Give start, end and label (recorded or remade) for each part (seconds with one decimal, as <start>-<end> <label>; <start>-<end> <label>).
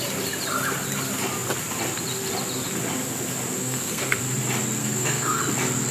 0.0-3.6 recorded; 3.6-4.2 remade; 4.2-4.8 recorded; 4.8-5.4 remade; 5.4-5.9 recorded